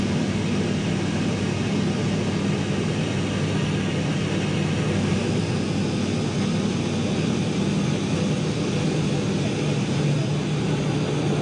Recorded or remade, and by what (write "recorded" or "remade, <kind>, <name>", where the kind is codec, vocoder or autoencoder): recorded